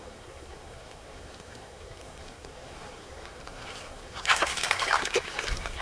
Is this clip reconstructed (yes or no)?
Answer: yes